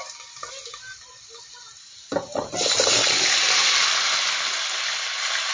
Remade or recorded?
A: recorded